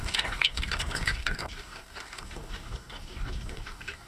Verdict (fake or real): fake